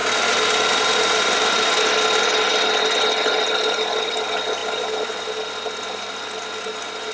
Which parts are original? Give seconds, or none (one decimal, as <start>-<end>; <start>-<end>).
0.0-7.1